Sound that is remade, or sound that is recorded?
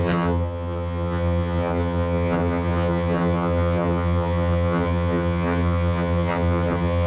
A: remade